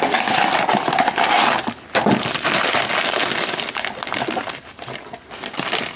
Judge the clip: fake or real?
real